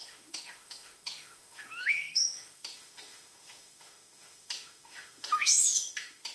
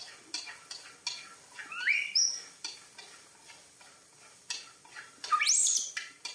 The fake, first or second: first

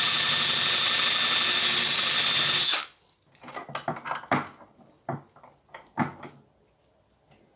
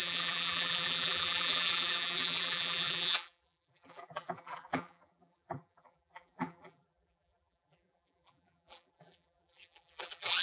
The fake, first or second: second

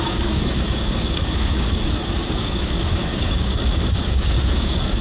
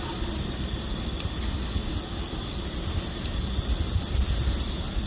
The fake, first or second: first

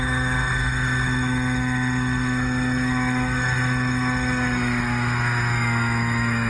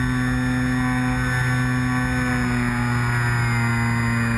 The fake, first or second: first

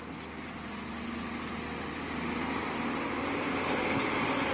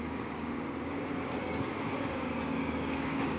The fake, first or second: second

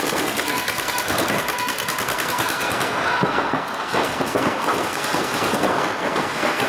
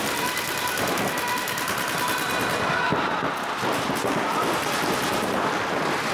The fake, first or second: first